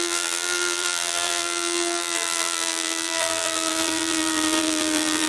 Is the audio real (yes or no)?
no